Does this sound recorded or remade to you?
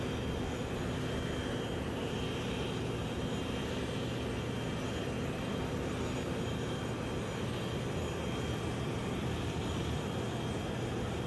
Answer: recorded